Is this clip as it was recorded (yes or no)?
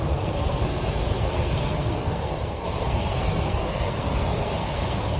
no